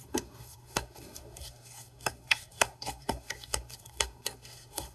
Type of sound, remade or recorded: remade